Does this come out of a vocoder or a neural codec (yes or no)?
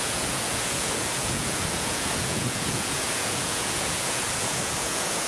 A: yes